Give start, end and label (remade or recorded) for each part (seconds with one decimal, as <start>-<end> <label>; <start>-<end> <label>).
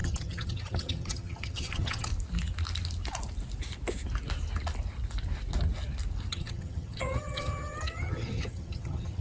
0.0-2.1 remade; 2.1-6.3 recorded; 6.3-9.2 remade